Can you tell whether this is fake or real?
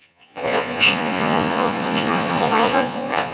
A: fake